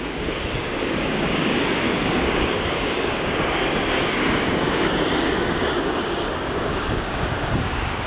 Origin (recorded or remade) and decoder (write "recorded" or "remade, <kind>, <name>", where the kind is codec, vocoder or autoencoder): remade, codec, DAC